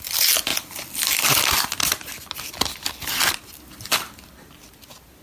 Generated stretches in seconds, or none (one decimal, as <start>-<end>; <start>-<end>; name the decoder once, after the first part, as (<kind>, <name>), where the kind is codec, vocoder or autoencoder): none